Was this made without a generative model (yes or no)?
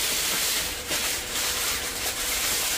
no